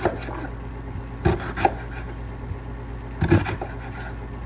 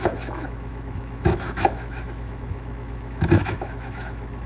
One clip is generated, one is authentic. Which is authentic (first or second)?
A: first